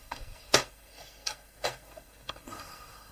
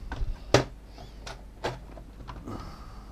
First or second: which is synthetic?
first